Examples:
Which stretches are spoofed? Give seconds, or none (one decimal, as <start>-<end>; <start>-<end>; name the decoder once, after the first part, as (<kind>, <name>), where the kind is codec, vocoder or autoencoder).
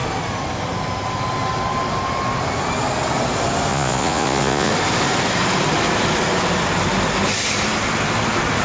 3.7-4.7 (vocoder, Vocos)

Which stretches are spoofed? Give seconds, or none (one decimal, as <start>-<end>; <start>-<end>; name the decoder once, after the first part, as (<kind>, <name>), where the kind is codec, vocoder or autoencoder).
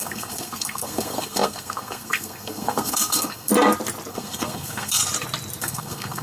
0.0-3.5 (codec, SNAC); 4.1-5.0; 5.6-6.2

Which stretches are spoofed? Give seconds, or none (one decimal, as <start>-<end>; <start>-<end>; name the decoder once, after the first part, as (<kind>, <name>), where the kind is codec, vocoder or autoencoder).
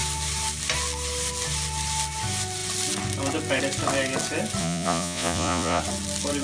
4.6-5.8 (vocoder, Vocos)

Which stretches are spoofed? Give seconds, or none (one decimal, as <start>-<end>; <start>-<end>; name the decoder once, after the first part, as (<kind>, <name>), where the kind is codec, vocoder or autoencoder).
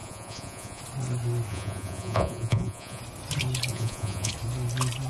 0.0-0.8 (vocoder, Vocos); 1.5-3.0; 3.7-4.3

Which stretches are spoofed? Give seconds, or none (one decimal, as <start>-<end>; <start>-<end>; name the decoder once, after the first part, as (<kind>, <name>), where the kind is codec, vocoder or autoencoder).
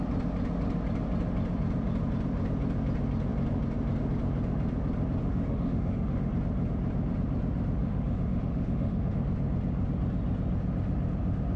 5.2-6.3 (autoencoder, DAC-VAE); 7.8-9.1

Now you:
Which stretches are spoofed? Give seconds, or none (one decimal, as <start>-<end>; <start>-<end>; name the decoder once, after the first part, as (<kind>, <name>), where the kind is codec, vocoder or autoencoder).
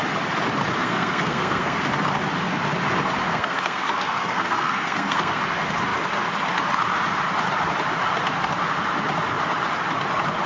0.8-1.8 (codec, SNAC); 3.3-5.4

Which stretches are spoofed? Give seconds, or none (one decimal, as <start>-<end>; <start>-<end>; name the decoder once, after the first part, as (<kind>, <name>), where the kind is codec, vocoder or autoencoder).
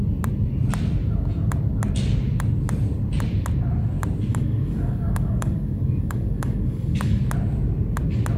4.3-7.2 (codec, DAC)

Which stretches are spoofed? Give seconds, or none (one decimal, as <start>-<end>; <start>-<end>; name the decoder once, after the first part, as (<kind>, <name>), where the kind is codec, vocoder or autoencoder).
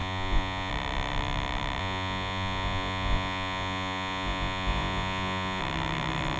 0.0-0.7 (vocoder, Vocos); 1.8-5.6